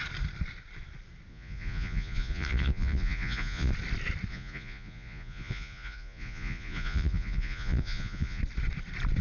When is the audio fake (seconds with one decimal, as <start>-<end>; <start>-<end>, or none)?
1.3-3.7; 4.3-8.4